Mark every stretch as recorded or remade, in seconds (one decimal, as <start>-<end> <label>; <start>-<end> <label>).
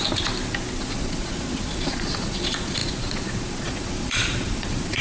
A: 0.0-0.8 recorded; 0.8-5.0 remade